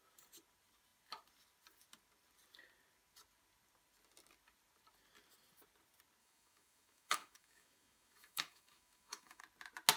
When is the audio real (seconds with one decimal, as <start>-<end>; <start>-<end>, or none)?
0.0-6.2; 9.4-10.0